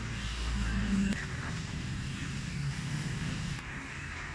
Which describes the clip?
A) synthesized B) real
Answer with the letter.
A